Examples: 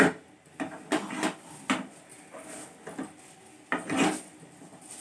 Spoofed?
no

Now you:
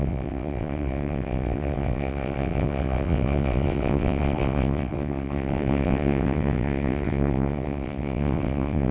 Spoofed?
yes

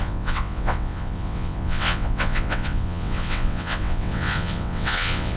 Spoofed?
yes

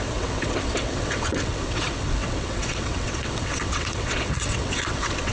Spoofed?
yes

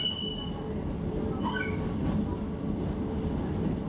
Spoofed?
no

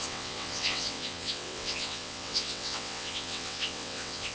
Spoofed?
yes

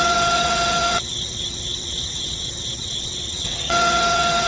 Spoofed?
yes